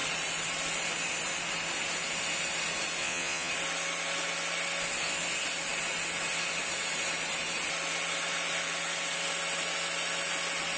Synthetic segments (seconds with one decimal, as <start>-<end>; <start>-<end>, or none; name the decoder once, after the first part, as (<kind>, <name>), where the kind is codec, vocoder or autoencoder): 3.0-3.5 (vocoder, Vocos)